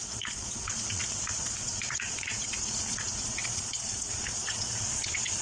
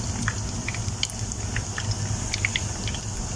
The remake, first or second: first